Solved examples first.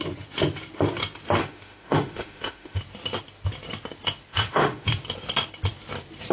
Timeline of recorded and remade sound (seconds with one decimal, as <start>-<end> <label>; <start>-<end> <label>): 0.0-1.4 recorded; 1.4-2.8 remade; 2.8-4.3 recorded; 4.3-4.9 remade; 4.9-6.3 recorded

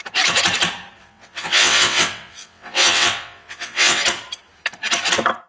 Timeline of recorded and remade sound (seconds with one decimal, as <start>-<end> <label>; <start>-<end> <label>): 0.0-1.0 recorded; 1.0-4.0 remade; 4.0-5.5 recorded

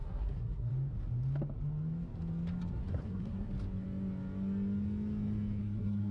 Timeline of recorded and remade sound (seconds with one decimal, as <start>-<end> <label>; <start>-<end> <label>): 0.0-0.7 remade; 0.7-2.8 recorded; 2.8-3.5 remade; 3.5-5.6 recorded; 5.6-6.1 remade

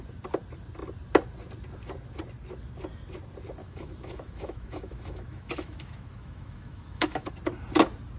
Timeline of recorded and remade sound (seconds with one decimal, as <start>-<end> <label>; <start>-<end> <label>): 0.0-3.6 recorded; 3.6-7.3 remade; 7.3-8.2 recorded

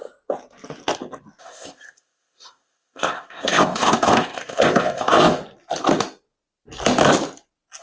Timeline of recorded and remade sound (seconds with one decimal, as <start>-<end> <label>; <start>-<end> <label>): 0.0-1.4 recorded; 1.4-5.4 remade; 5.4-7.8 recorded

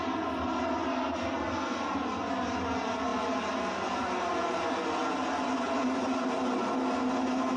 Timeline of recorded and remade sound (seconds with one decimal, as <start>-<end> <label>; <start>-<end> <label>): 0.0-7.6 recorded

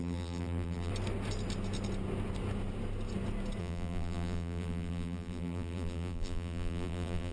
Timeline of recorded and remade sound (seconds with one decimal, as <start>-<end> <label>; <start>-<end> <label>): 0.0-0.9 remade; 0.9-3.6 recorded; 3.6-7.3 remade

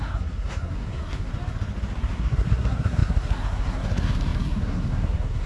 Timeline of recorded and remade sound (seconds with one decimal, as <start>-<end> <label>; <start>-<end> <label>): 0.0-1.3 remade; 1.3-2.0 recorded; 2.0-5.5 remade